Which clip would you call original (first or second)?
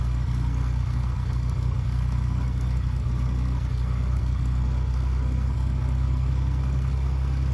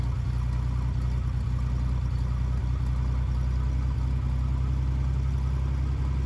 second